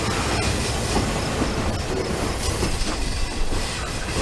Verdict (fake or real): real